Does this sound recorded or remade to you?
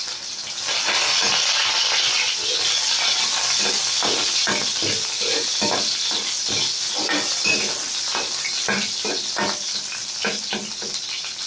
recorded